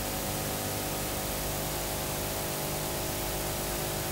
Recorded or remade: recorded